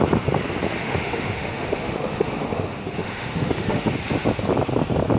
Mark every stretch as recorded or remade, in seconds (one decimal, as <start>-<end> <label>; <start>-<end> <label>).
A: 0.0-0.8 recorded; 0.8-3.9 remade; 3.9-5.2 recorded